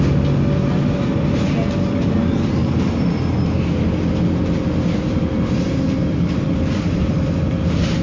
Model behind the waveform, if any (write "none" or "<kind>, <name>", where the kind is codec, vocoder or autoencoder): none